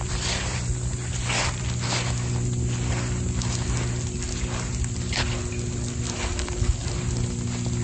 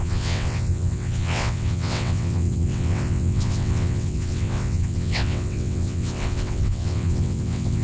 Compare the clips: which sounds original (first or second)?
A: first